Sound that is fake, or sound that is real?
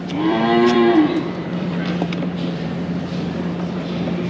fake